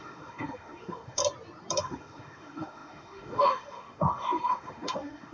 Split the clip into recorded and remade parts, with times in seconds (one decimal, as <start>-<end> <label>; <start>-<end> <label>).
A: 0.0-1.2 remade; 1.2-1.8 recorded; 1.8-5.3 remade